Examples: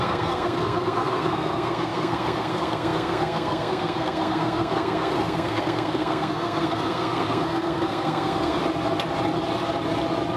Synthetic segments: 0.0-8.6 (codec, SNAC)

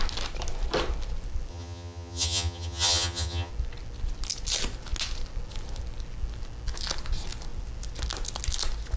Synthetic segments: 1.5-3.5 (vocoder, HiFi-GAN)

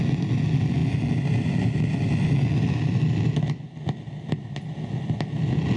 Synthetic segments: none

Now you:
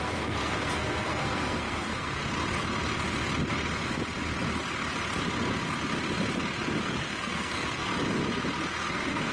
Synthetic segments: 0.0-2.2 (codec, SNAC); 6.8-7.9; 8.9-9.3

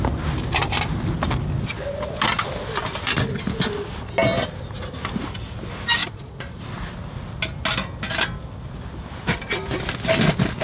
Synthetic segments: 6.0-6.6 (vocoder, Vocos)

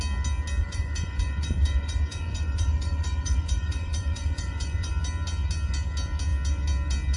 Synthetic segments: 0.6-4.9 (vocoder, Vocos)